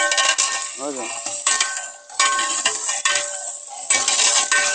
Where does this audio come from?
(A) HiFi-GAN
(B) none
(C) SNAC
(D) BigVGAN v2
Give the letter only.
B